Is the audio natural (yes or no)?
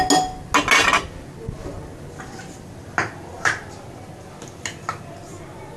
yes